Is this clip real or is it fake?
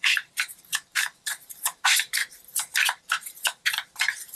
fake